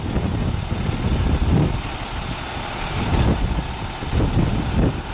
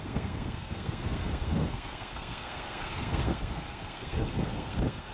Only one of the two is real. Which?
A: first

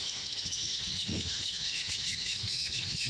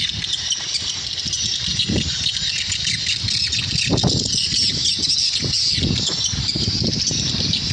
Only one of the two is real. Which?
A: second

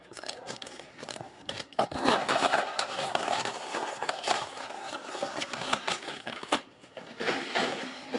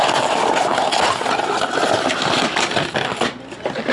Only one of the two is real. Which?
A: second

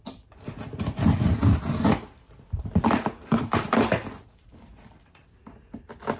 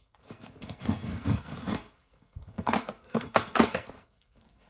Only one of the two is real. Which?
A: first